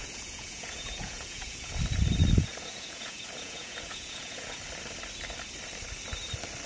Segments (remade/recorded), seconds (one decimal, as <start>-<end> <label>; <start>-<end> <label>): 0.0-1.8 remade; 1.8-2.5 recorded; 2.5-4.6 remade; 4.6-6.7 recorded

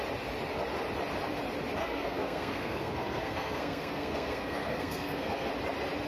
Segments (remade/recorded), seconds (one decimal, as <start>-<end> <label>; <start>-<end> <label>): 0.0-1.8 recorded; 1.8-5.5 remade; 5.5-6.1 recorded

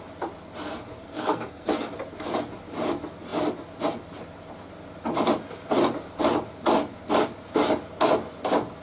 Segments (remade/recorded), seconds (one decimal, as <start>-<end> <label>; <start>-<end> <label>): 0.0-1.0 recorded; 1.0-1.9 remade; 1.9-8.8 recorded

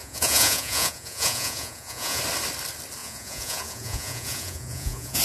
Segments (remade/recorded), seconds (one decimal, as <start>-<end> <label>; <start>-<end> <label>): 0.0-2.2 remade; 2.2-3.0 recorded; 3.0-5.2 remade

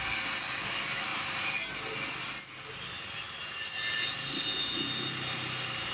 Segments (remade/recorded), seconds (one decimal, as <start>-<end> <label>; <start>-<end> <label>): 0.0-5.9 recorded